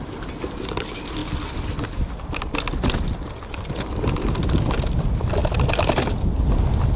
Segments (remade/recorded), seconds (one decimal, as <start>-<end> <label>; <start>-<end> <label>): 0.0-7.0 recorded